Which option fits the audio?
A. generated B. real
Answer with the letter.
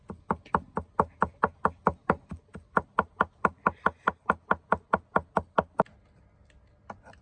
B